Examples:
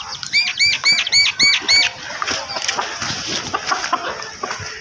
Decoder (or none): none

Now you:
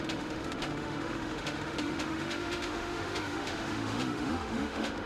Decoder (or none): autoencoder, DAC-VAE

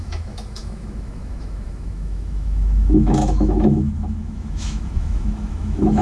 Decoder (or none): autoencoder, DAC-VAE